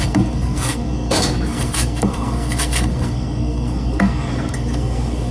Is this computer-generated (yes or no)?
yes